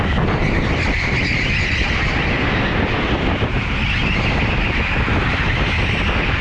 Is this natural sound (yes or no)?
yes